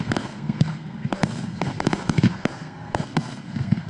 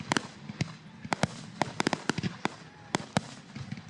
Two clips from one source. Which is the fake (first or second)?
first